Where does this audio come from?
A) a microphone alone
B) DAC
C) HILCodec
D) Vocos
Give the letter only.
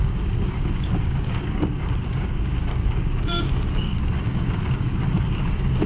B